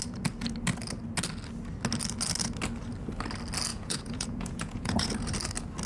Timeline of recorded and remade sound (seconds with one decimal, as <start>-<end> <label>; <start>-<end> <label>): 0.0-3.7 recorded; 3.7-5.1 remade; 5.1-5.9 recorded